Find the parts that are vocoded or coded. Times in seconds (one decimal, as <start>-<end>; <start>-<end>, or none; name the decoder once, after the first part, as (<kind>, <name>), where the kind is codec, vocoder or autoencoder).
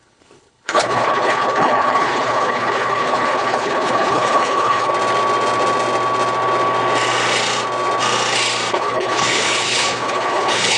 0.0-4.9 (codec, HILCodec); 8.7-10.8